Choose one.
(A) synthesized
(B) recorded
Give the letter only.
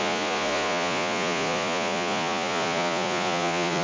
A